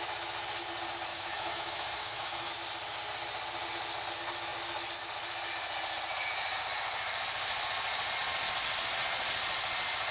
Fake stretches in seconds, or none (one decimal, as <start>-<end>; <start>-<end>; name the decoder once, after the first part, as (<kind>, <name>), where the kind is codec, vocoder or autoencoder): 1.1-2.5 (autoencoder, DAC-VAE)